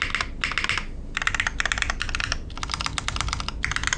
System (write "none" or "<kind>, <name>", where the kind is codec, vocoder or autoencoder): none